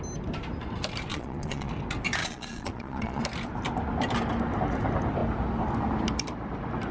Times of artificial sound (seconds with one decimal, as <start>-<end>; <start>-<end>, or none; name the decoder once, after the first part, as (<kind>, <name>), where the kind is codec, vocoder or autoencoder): 1.1-1.7 (vocoder, Vocos); 2.2-3.2